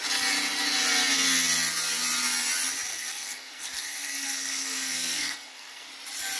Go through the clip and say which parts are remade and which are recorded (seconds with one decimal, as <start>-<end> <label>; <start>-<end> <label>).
0.0-2.9 recorded; 2.9-5.9 remade; 5.9-6.4 recorded